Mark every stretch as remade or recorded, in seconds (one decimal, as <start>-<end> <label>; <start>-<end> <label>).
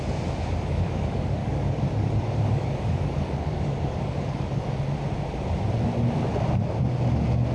0.0-0.4 recorded; 0.4-4.7 remade; 4.7-7.5 recorded